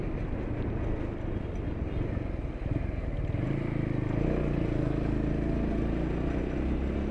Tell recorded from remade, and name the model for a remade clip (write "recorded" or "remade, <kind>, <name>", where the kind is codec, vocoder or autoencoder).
recorded